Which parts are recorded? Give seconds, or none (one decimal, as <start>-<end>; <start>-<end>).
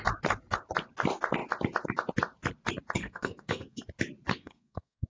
0.0-3.0; 3.8-4.3